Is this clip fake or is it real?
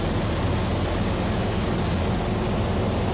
real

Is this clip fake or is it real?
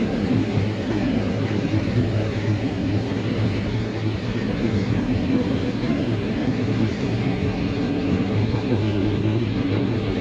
fake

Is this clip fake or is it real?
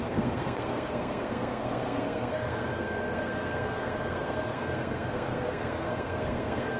fake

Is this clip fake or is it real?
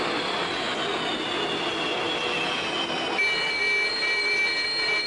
real